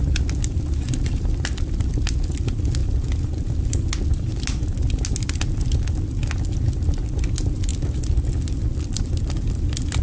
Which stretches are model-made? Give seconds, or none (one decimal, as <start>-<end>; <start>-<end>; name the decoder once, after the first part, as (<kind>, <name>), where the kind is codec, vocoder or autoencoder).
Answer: none